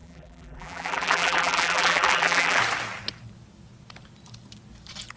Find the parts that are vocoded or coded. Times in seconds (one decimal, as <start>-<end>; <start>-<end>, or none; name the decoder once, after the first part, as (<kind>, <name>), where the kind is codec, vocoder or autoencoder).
0.0-2.6 (vocoder, BigVGAN v2)